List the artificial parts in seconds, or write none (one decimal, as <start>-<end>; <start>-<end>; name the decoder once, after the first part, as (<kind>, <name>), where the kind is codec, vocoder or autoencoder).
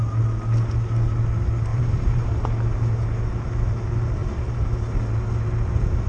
1.7-2.4 (vocoder, BigVGAN v2); 4.2-4.7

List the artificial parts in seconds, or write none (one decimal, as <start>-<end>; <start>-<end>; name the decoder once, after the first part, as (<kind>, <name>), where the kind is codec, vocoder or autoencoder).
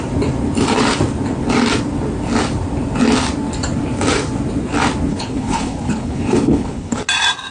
5.1-7.0 (codec, HILCodec)